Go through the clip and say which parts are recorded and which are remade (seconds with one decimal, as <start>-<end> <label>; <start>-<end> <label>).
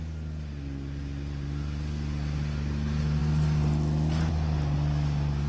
0.0-5.5 recorded